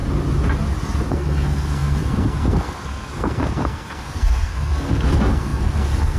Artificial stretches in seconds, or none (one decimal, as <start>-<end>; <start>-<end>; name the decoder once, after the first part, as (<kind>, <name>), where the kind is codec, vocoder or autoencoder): 1.1-6.2 (codec, SNAC)